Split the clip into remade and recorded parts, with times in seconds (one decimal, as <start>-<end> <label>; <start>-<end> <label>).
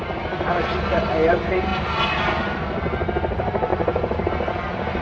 0.0-5.0 recorded